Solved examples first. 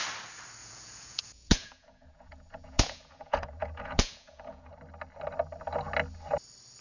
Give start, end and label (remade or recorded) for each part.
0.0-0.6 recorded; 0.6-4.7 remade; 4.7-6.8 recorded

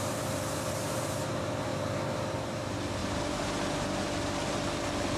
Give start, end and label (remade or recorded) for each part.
0.0-5.2 recorded

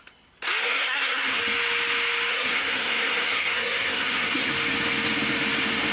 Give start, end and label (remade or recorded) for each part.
0.0-0.6 recorded; 0.6-1.4 remade; 1.4-2.3 recorded; 2.3-4.5 remade; 4.5-5.9 recorded

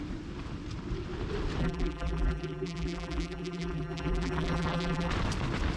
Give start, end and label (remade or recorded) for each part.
0.0-1.6 recorded; 1.6-5.1 remade; 5.1-5.8 recorded